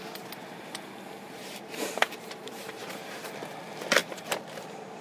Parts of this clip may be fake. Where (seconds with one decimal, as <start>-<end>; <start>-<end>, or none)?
1.4-3.3; 4.0-5.0